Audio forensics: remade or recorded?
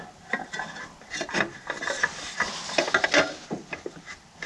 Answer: recorded